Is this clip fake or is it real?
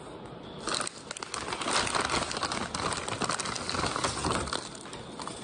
real